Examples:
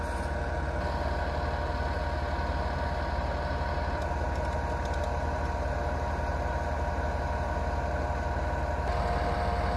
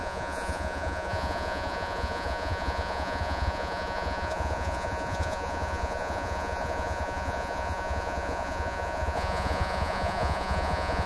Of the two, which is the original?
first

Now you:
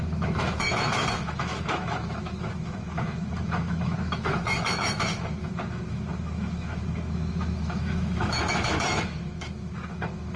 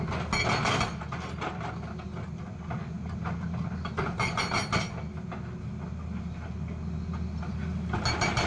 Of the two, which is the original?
second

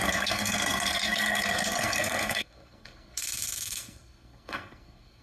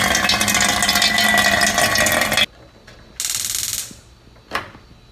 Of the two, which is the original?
second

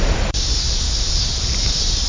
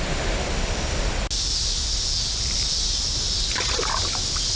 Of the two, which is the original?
second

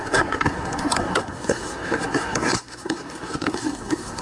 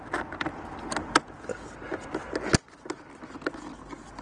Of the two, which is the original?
second